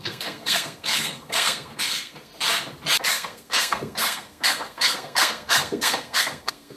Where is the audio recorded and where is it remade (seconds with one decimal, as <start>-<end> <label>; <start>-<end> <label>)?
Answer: 0.0-2.3 remade; 2.3-3.1 recorded; 3.1-6.8 remade